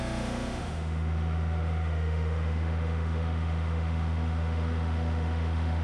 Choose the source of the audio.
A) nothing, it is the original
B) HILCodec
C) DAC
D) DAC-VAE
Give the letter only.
D